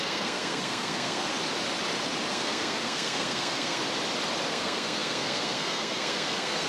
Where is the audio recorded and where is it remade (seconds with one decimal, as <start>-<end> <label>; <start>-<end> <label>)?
0.0-1.3 remade; 1.3-2.3 recorded; 2.3-3.8 remade; 3.8-4.5 recorded; 4.5-6.7 remade